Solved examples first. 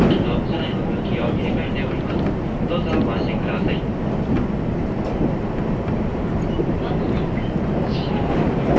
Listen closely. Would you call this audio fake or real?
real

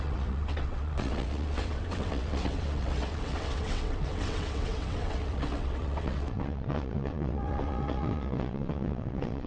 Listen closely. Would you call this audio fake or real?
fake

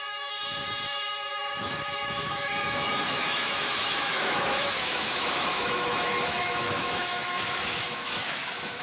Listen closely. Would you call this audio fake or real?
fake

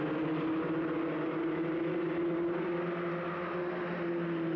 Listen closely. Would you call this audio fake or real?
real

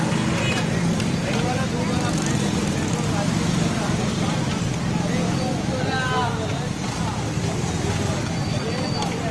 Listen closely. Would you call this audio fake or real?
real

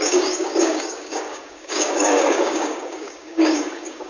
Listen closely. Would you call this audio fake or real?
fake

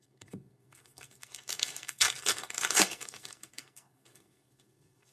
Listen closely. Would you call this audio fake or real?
fake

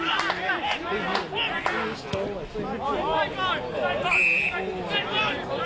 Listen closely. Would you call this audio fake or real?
real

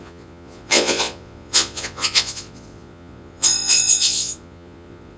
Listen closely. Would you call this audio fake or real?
fake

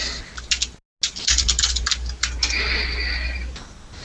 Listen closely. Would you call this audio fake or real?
real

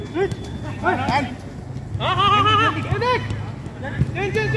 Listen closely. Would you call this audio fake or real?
real